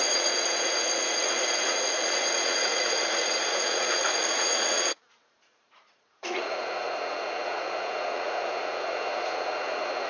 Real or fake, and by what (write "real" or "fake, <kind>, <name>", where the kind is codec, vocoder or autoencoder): fake, vocoder, Vocos